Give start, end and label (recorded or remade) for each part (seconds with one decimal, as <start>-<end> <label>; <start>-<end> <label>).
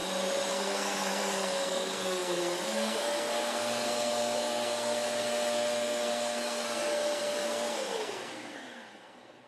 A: 0.0-0.5 recorded; 0.5-9.5 remade